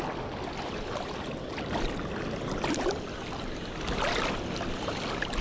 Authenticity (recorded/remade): recorded